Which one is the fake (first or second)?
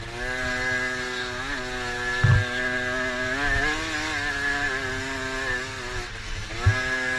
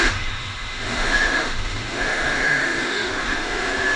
second